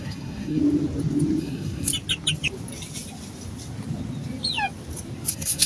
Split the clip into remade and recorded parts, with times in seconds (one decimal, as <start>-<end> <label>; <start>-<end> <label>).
0.0-0.6 remade; 0.6-1.4 recorded; 1.4-1.9 remade; 1.9-5.3 recorded; 5.3-5.7 remade